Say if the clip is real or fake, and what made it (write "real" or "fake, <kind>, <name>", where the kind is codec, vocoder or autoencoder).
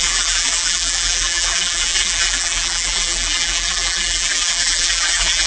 fake, vocoder, BigVGAN v2